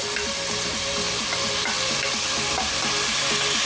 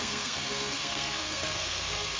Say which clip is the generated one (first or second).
second